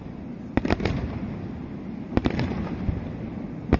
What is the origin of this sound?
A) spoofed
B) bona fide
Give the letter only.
B